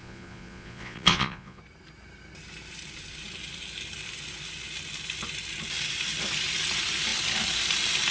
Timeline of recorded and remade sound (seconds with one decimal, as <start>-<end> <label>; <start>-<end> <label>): 0.0-1.6 remade; 1.6-8.1 recorded